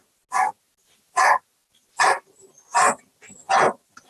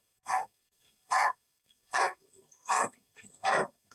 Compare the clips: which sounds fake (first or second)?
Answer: second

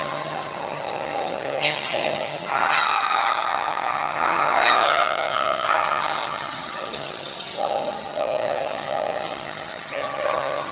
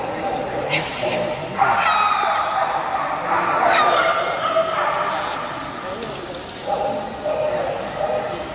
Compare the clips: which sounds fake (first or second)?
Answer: first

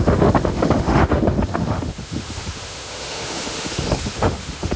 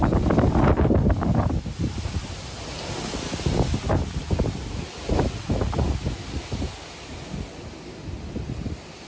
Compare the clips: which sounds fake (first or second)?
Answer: first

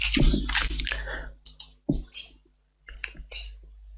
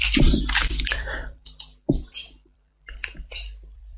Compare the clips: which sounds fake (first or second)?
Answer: second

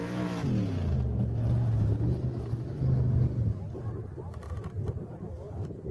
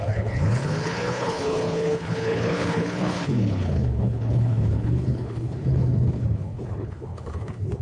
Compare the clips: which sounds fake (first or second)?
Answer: second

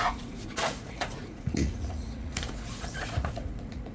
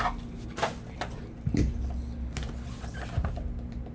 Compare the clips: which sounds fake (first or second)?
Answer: first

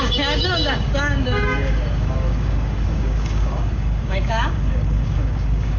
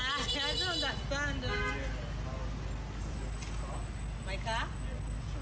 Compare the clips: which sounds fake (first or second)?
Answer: first